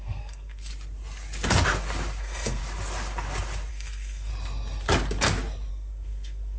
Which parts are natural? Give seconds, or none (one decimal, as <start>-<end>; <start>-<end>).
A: 0.7-2.2; 2.6-3.7; 4.3-5.7